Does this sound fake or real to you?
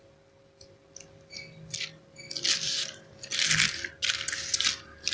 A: real